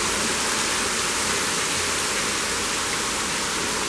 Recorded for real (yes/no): yes